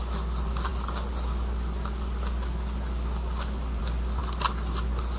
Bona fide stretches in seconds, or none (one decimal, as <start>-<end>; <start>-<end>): 0.0-5.2